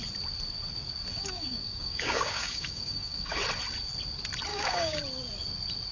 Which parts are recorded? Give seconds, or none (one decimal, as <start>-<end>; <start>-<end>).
0.0-1.1; 3.4-4.5; 5.0-5.9